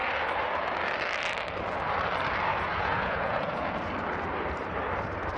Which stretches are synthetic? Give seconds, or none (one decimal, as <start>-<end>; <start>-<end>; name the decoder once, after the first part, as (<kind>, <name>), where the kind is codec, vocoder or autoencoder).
2.5-3.8 (vocoder, Vocos)

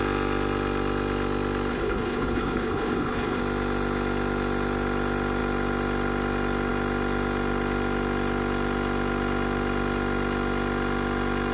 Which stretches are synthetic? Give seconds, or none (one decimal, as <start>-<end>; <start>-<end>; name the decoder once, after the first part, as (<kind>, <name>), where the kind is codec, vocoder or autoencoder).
1.7-3.4 (codec, HILCodec)